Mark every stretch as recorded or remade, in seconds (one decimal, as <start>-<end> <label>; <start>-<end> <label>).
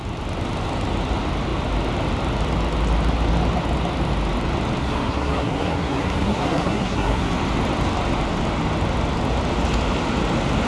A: 0.0-4.8 recorded; 4.8-7.3 remade; 7.3-10.7 recorded